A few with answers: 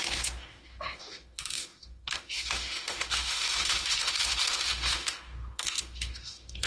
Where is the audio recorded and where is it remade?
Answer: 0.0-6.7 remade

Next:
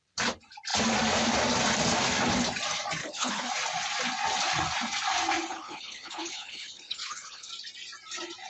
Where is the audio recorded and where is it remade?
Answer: 0.0-3.0 recorded; 3.0-3.5 remade; 3.5-5.5 recorded; 5.5-7.5 remade; 7.5-8.5 recorded

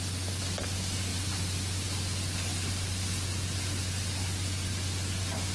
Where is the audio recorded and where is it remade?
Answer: 0.0-5.5 recorded

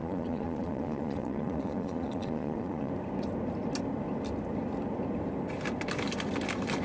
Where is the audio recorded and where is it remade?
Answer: 0.0-2.9 remade; 2.9-6.8 recorded